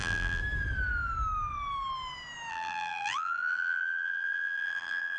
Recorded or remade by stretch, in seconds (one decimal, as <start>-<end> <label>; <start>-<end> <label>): 0.0-0.4 remade; 0.4-2.5 recorded; 2.5-5.2 remade